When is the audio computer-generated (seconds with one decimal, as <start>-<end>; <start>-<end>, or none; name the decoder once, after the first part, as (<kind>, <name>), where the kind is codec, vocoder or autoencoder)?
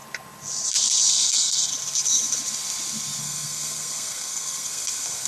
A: 1.1-1.7 (codec, SNAC); 3.2-5.3